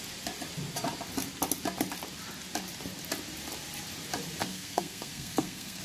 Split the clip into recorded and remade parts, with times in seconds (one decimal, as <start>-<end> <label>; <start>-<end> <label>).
0.0-4.4 recorded; 4.4-5.8 remade